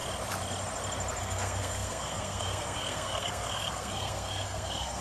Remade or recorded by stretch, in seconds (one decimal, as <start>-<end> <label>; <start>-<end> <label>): 0.0-1.2 recorded; 1.2-5.0 remade

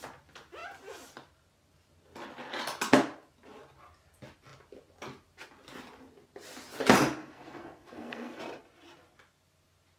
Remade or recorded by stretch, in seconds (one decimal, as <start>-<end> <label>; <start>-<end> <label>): 0.0-7.2 recorded; 7.2-8.4 remade; 8.4-10.0 recorded

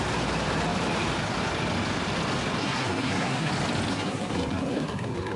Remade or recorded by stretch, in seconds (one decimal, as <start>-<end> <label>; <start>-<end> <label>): 0.0-2.6 recorded; 2.6-3.5 remade; 3.5-3.9 recorded; 3.9-5.4 remade

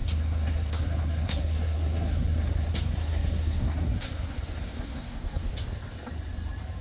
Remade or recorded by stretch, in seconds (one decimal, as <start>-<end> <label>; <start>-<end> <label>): 0.0-5.5 remade; 5.5-6.8 recorded

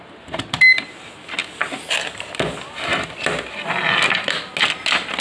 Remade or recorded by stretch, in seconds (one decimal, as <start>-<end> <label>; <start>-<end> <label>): 0.0-5.2 recorded